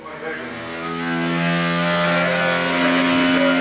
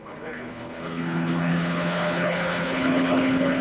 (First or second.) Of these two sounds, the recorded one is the first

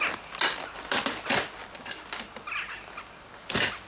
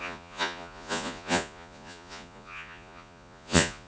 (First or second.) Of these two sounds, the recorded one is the first